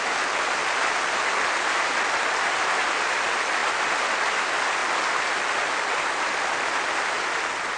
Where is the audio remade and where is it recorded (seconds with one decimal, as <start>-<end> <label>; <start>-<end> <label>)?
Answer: 0.0-7.8 recorded